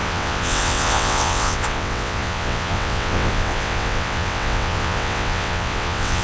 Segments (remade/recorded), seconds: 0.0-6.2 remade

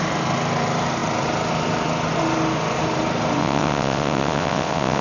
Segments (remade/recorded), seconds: 0.0-3.4 recorded; 3.4-5.0 remade

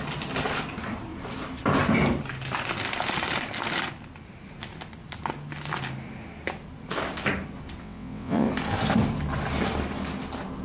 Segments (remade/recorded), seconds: 0.0-7.8 recorded; 7.8-8.5 remade; 8.5-10.6 recorded